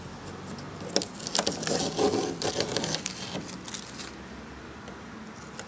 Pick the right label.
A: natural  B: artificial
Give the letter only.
A